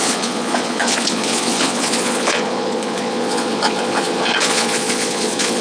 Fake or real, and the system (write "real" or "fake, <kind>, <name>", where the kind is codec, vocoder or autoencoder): fake, vocoder, Vocos